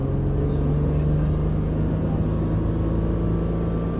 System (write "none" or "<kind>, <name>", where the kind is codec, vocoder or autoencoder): none